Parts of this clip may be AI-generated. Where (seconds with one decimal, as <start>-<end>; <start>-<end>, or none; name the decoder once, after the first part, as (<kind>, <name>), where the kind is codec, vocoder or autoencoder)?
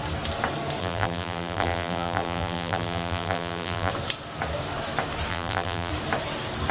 0.8-3.9 (vocoder, BigVGAN v2); 5.3-5.9